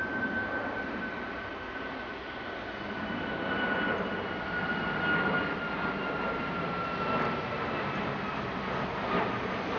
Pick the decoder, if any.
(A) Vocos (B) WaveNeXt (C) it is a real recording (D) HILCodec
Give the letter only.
C